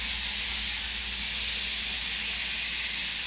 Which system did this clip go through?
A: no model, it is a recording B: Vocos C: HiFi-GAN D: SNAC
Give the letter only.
A